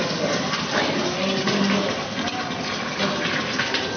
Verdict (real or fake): real